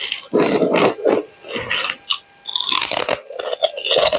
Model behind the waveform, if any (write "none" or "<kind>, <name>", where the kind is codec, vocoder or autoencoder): none